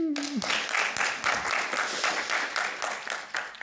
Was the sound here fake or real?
real